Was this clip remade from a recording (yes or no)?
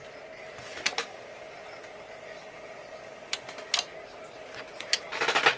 no